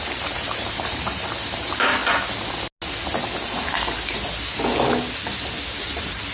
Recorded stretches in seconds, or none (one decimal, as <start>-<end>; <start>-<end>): 2.0-5.8